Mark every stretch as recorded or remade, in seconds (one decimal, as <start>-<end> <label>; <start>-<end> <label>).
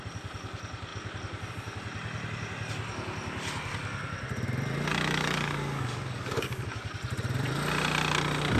0.0-4.9 recorded; 4.9-6.9 remade; 6.9-8.6 recorded